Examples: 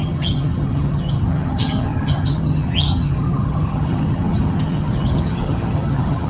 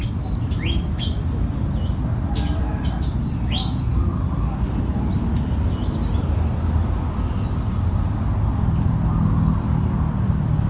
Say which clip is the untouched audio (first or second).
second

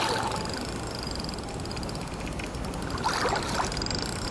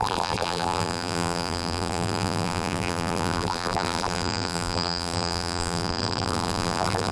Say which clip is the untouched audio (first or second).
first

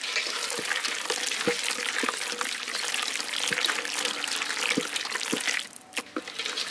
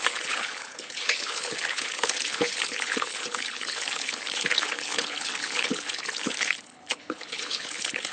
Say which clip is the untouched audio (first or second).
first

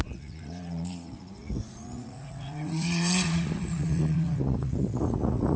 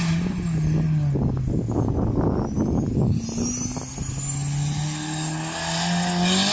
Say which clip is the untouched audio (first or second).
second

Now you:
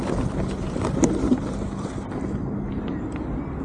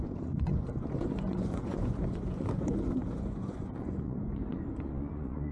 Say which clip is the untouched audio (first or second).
first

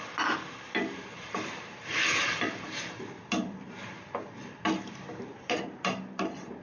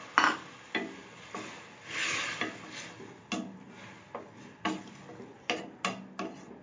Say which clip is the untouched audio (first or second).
second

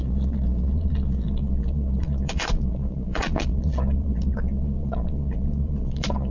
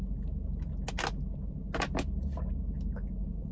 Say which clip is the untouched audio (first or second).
second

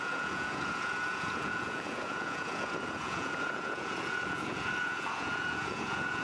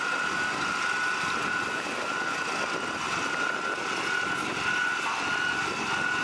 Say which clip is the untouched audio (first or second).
second